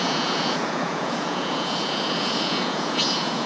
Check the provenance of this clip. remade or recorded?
remade